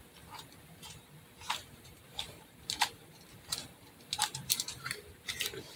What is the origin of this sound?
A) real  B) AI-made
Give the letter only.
B